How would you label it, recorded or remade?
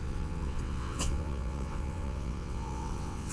remade